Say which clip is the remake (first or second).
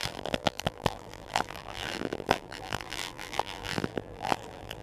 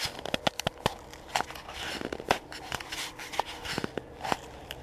first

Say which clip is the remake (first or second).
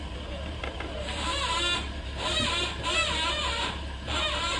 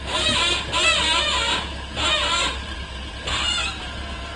first